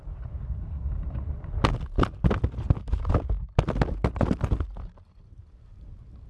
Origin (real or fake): real